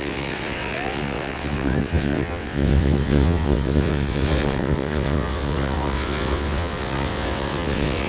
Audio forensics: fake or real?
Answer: fake